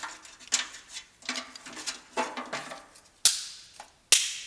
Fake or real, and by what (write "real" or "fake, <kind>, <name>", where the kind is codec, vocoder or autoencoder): real